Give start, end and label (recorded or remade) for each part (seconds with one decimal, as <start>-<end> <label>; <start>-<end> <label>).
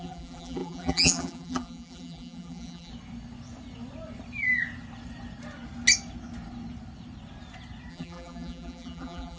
0.0-2.9 remade; 2.9-7.9 recorded; 7.9-9.4 remade